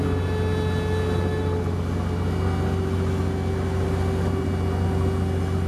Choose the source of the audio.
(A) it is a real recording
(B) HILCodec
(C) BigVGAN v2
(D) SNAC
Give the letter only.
A